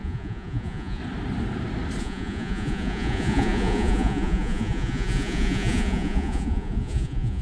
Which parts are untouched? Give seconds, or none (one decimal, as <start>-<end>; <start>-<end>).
1.0-2.0